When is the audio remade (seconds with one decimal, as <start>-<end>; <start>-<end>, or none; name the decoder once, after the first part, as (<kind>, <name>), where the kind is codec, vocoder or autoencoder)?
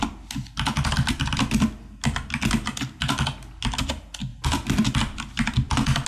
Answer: none